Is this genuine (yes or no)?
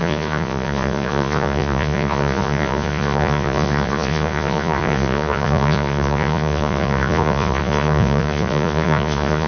no